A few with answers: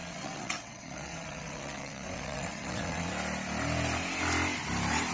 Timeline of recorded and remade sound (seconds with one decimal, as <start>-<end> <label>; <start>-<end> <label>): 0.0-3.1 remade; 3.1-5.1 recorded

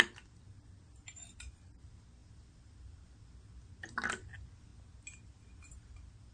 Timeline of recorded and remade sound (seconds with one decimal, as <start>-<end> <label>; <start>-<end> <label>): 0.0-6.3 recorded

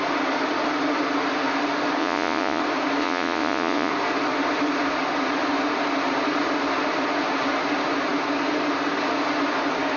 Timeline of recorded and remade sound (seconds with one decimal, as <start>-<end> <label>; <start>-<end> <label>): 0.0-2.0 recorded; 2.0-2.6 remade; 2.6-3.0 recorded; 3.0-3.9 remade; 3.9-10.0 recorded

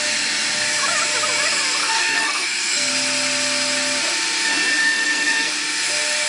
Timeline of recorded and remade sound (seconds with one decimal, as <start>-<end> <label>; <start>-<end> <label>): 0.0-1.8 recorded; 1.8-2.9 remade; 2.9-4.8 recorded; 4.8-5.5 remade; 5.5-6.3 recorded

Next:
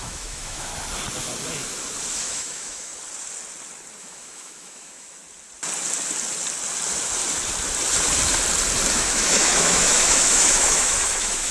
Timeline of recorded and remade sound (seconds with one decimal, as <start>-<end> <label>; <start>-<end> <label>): 0.0-0.7 remade; 0.7-2.2 recorded; 2.2-2.9 remade; 2.9-4.0 recorded; 4.0-5.2 remade; 5.2-8.9 recorded; 8.9-11.5 remade

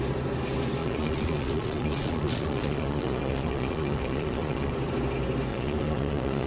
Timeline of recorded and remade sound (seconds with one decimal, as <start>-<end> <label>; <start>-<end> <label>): 0.0-0.8 recorded; 0.8-4.7 remade; 4.7-5.5 recorded; 5.5-6.5 remade

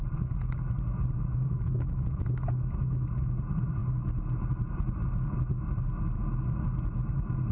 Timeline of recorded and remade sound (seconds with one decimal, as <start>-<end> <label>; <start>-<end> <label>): 0.0-1.4 recorded; 1.4-2.2 remade; 2.2-7.5 recorded

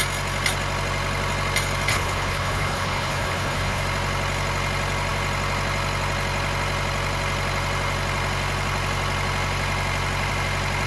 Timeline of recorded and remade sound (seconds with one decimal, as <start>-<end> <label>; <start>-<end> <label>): 0.0-1.9 recorded; 1.9-3.8 remade; 3.8-10.9 recorded